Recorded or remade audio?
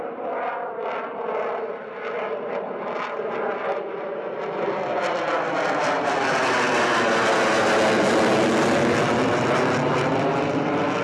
recorded